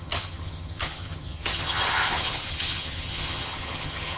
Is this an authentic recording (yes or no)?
no